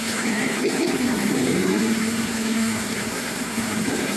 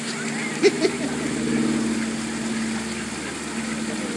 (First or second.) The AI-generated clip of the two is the first